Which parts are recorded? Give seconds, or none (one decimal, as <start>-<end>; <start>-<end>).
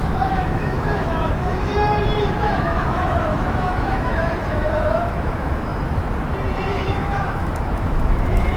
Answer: 1.7-2.2; 5.7-6.7